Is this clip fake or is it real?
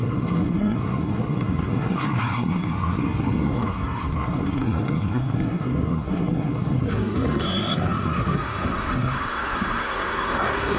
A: fake